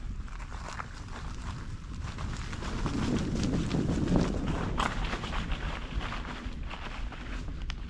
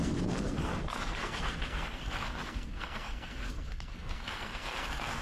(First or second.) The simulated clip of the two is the second